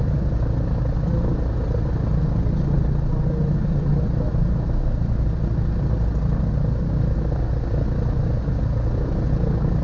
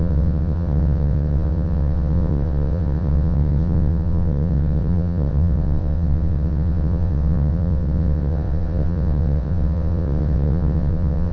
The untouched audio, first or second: first